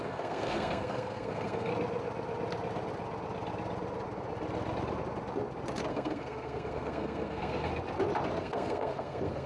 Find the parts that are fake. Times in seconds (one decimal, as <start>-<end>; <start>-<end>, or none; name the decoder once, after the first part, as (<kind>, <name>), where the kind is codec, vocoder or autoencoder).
0.0-1.7 (codec, SNAC); 5.9-7.7; 8.4-9.5